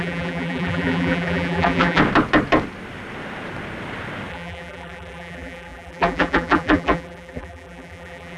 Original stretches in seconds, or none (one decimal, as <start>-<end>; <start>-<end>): 2.0-4.3